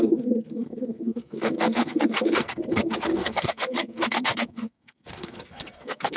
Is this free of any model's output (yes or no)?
no